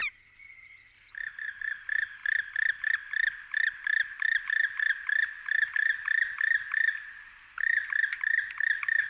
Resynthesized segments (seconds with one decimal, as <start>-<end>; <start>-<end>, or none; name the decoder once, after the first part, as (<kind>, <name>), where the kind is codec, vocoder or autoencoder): none